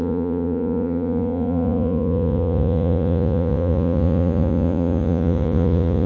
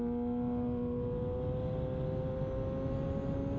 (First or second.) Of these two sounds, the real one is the second